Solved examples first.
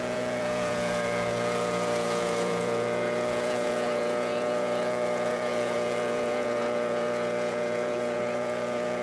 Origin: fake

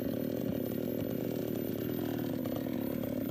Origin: real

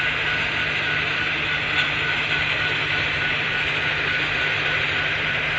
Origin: real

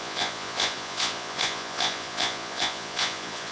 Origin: fake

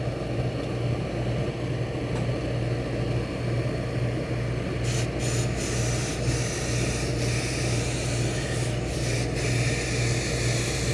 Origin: real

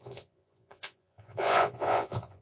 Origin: fake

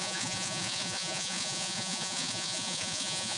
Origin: fake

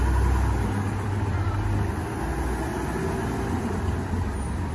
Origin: real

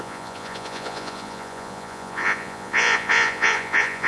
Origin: fake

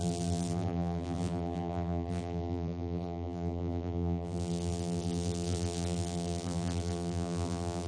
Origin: fake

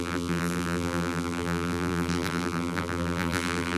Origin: fake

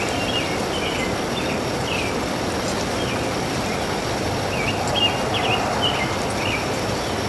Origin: real